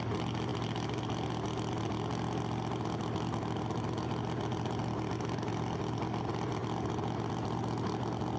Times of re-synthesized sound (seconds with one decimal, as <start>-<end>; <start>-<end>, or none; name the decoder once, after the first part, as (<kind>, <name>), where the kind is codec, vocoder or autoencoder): none